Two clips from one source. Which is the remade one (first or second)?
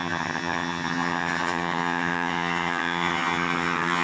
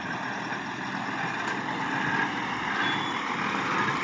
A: first